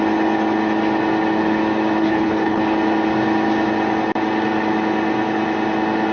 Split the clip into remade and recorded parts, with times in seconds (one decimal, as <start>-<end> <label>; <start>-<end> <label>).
0.0-2.0 recorded; 2.0-2.6 remade; 2.6-6.1 recorded